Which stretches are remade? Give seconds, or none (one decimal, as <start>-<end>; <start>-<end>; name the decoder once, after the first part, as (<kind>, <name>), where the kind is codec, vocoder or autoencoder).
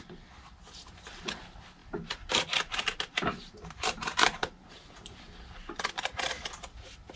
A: 1.8-5.2 (vocoder, BigVGAN v2)